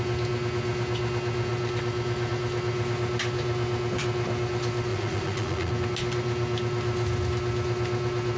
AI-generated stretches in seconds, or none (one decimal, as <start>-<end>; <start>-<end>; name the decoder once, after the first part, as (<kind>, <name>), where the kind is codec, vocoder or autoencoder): 4.9-5.7 (vocoder, Vocos)